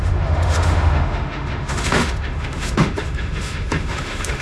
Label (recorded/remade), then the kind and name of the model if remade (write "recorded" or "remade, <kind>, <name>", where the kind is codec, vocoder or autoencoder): remade, autoencoder, DAC-VAE